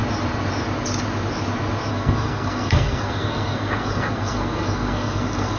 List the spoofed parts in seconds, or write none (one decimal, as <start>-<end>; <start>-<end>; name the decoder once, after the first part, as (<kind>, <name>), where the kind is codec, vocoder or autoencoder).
1.9-5.6 (codec, SNAC)